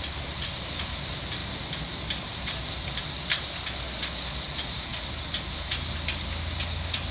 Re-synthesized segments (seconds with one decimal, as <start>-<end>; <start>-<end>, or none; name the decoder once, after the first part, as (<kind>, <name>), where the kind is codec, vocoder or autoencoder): 1.4-3.0 (vocoder, BigVGAN v2)